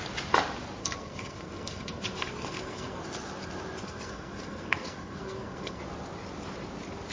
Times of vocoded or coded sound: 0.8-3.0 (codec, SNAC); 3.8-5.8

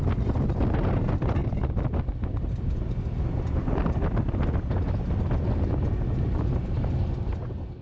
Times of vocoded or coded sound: none

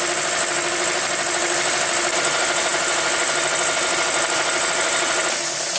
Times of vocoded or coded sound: none

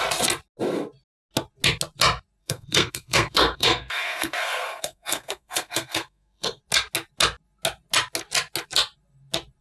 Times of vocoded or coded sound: 2.4-6.6 (codec, SNAC)

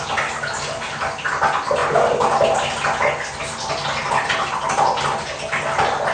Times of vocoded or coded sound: none

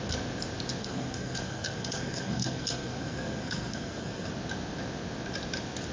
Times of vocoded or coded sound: 0.8-4.3 (codec, SNAC)

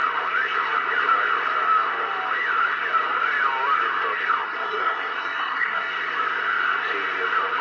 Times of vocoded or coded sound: 4.4-5.9 (codec, SNAC)

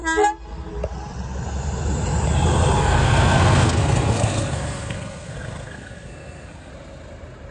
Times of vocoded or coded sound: 2.8-6.7 (codec, SNAC)